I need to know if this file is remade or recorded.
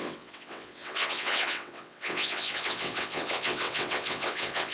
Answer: remade